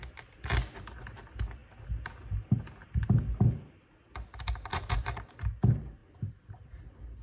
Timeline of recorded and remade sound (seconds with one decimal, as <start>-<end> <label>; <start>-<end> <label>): 0.0-4.7 recorded; 4.7-5.3 remade; 5.3-7.2 recorded